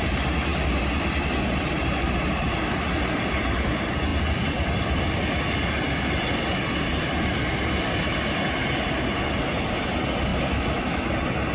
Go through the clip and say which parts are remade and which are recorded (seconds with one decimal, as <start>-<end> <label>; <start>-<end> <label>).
0.0-10.3 recorded; 10.3-11.1 remade; 11.1-11.5 recorded